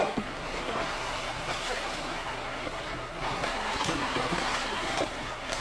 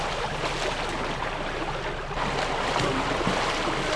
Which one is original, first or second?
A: second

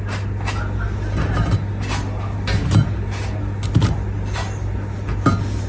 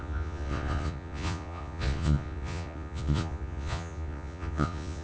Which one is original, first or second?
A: first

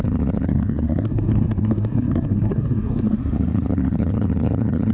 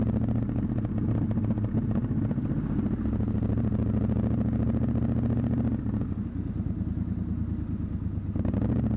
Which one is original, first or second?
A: second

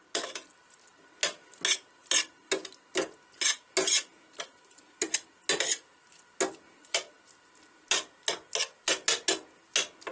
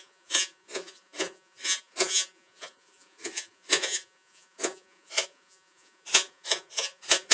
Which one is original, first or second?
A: first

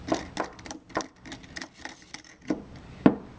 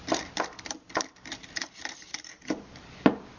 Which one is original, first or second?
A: first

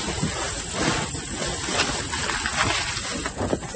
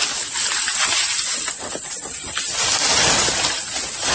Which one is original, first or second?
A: first